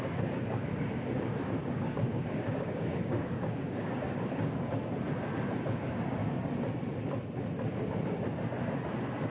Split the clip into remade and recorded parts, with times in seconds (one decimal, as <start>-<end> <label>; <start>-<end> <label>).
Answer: 0.0-4.8 remade; 4.8-5.7 recorded; 5.7-6.2 remade; 6.2-9.3 recorded